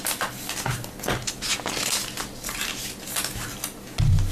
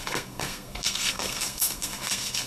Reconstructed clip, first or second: second